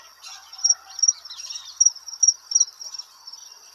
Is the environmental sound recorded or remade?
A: recorded